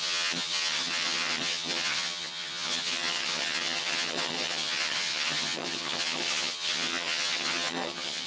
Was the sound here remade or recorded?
remade